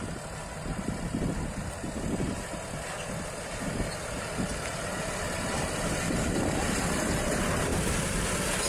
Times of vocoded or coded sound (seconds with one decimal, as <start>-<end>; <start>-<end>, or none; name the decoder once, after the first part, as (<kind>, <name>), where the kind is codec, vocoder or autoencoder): none